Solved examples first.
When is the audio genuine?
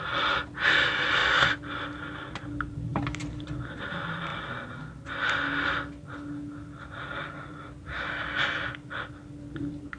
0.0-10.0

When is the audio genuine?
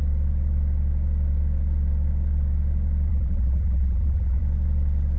0.0-3.1; 4.4-5.2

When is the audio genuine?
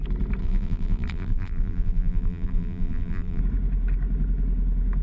0.0-0.4; 3.4-5.0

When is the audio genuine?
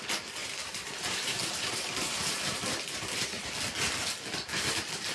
0.0-0.4; 3.5-5.1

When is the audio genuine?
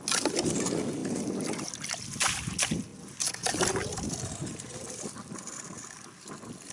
0.0-6.7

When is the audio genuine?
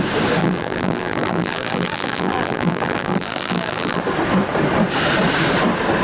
0.0-0.4; 4.0-6.0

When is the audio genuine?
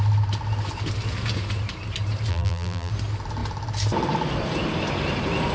0.0-2.3; 2.9-5.5